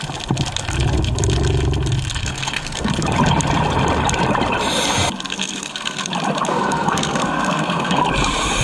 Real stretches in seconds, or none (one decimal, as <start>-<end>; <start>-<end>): 0.0-2.2; 2.9-5.3; 6.1-6.5; 8.0-8.6